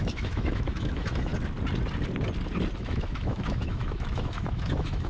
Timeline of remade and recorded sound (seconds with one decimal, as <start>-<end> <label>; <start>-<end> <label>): 0.0-1.3 remade; 1.3-2.8 recorded; 2.8-5.1 remade